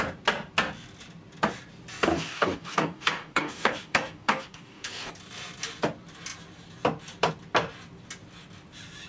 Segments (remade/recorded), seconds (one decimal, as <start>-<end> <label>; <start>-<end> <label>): 0.0-2.1 recorded; 2.1-5.1 remade; 5.1-9.1 recorded